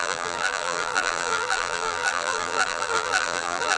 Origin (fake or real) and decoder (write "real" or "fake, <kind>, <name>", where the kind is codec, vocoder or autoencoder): fake, vocoder, BigVGAN v2